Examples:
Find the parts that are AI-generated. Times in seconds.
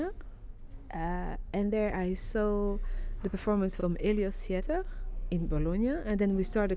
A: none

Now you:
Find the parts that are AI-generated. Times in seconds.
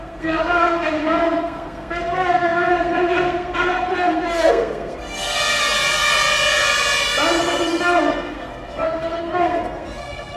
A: 0.0-5.6 (codec, SNAC); 7.4-10.4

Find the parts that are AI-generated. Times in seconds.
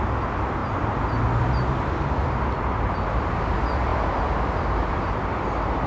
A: none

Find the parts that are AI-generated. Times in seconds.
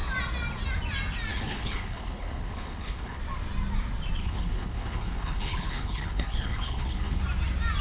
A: 1.3-3.2 (codec, HILCodec); 4.2-7.2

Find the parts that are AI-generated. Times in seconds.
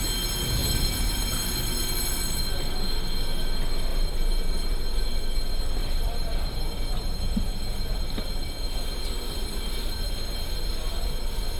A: 3.9-4.8 (vocoder, BigVGAN v2); 5.8-7.5